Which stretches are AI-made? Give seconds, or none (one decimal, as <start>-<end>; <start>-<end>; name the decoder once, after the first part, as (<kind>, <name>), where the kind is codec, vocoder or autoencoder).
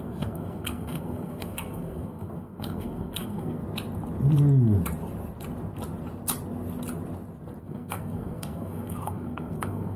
0.0-3.6 (codec, SNAC); 7.6-10.0